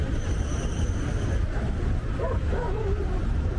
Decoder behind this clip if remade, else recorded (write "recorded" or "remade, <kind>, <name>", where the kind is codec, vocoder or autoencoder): recorded